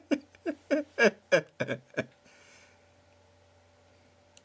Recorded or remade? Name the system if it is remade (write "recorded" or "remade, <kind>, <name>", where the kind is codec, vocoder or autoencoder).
recorded